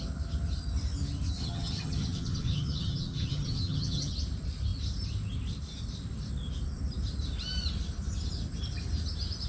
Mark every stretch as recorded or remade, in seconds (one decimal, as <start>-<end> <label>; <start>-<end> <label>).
0.0-1.4 recorded; 1.4-4.1 remade; 4.1-9.5 recorded